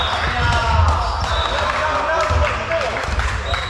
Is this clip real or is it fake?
real